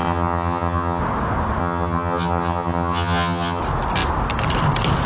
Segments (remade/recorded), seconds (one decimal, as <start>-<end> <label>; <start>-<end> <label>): 0.0-1.0 remade; 1.0-1.6 recorded; 1.6-3.6 remade; 3.6-5.1 recorded

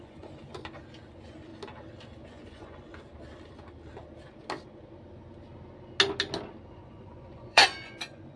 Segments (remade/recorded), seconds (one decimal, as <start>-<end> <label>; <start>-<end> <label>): 0.0-0.4 remade; 0.4-1.1 recorded; 1.1-1.5 remade; 1.5-2.3 recorded; 2.3-2.9 remade; 2.9-6.7 recorded; 6.7-8.4 remade

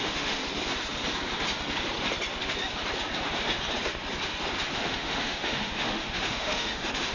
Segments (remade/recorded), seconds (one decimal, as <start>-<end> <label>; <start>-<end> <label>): 0.0-0.4 remade; 0.4-4.7 recorded; 4.7-7.1 remade

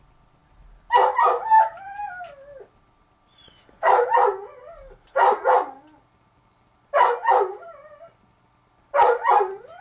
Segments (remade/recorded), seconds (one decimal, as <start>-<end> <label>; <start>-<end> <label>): 0.0-9.8 recorded

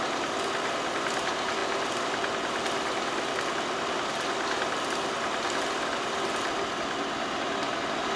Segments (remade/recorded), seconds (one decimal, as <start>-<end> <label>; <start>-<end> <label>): 0.0-8.2 recorded

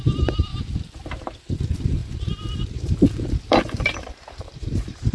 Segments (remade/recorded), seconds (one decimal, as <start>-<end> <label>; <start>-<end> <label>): 0.0-0.5 remade; 0.5-1.5 recorded; 1.5-5.1 remade

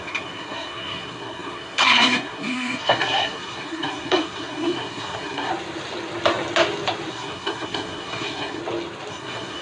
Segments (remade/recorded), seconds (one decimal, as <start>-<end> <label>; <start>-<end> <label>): 0.0-5.5 remade; 5.5-7.1 recorded; 7.1-8.6 remade; 8.6-9.1 recorded; 9.1-9.6 remade

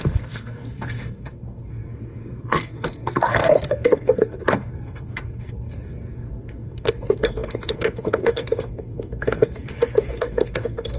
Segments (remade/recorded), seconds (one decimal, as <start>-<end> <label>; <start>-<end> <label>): 0.0-11.0 remade